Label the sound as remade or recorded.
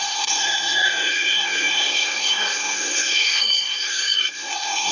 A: remade